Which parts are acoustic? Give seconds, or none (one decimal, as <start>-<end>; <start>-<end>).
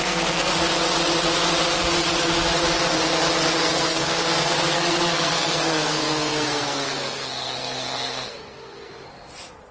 0.5-3.6; 8.9-9.7